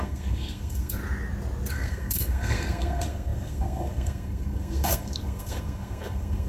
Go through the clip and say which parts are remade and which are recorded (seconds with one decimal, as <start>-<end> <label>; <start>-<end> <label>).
0.0-1.0 remade; 1.0-1.7 recorded; 1.7-6.5 remade